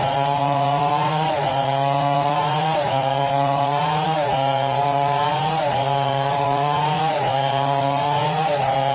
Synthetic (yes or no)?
yes